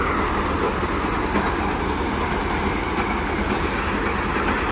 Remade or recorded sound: recorded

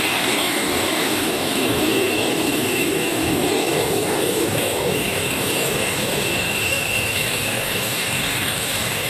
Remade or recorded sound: remade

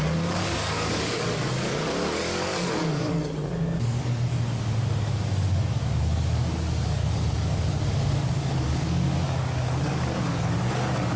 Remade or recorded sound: remade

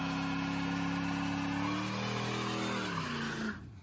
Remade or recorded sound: recorded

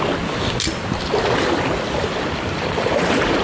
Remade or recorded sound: recorded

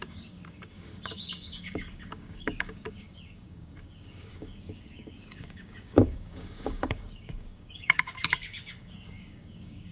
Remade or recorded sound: remade